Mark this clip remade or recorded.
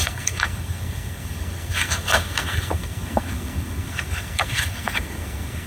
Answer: remade